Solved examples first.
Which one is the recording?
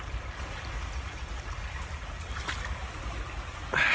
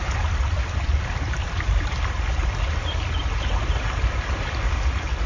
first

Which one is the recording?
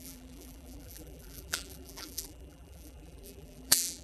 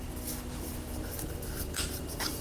second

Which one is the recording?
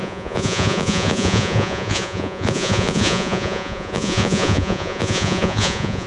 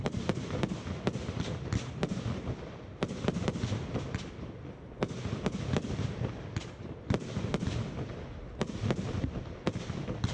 second